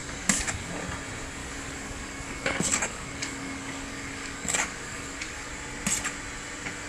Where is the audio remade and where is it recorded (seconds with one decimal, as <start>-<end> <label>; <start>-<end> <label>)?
0.0-0.7 remade; 0.7-1.4 recorded; 1.4-5.5 remade; 5.5-6.9 recorded